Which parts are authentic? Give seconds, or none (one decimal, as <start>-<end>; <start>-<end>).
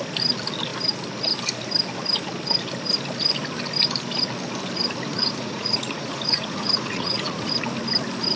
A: 0.0-5.1; 7.5-8.4